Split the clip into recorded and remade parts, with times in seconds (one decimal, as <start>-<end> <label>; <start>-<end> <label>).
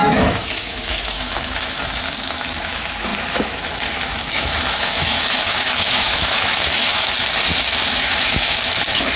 0.0-7.1 remade; 7.1-7.9 recorded; 7.9-9.2 remade